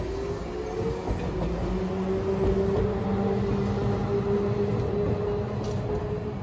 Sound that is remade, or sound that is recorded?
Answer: recorded